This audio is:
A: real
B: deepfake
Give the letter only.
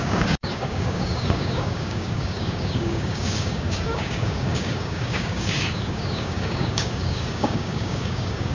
B